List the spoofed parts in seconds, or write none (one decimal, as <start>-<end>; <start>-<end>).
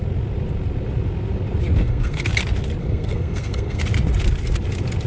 1.8-2.3; 2.8-3.8